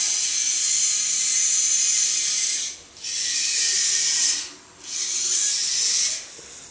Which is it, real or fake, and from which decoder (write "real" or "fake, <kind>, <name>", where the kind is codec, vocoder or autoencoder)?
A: real